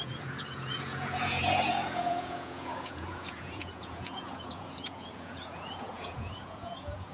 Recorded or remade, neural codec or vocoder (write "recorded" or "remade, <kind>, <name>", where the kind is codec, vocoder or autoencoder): remade, vocoder, Vocos